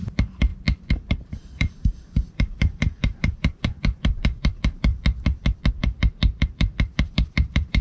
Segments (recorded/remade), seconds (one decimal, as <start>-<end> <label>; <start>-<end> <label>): 0.0-0.5 remade; 0.5-1.1 recorded; 1.1-4.9 remade; 4.9-5.7 recorded; 5.7-7.8 remade